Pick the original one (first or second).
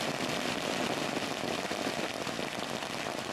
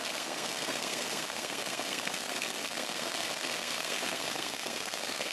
first